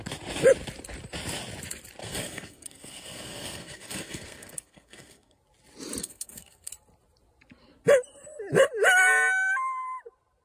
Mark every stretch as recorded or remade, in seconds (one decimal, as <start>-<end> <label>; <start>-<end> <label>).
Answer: 0.0-2.0 recorded; 2.0-5.4 remade; 5.4-6.0 recorded; 6.0-6.7 remade; 6.7-10.4 recorded